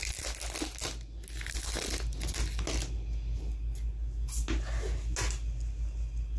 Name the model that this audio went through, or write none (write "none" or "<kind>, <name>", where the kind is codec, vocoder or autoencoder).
none